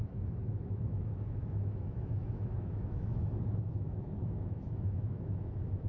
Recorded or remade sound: remade